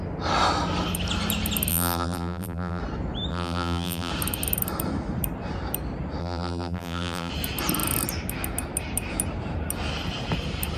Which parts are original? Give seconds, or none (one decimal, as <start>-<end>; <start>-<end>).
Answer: 0.0-1.7; 2.8-3.3; 4.1-6.2; 7.3-10.8